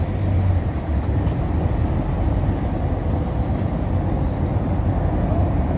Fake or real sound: real